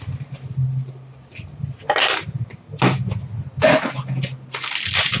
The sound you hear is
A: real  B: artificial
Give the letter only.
A